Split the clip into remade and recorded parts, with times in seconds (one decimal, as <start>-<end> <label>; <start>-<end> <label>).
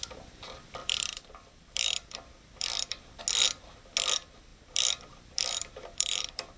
0.0-0.8 recorded; 0.8-3.2 remade; 3.2-4.5 recorded; 4.5-6.6 remade